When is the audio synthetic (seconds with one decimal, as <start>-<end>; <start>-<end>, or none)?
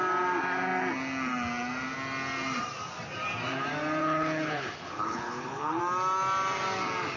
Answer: 4.0-5.8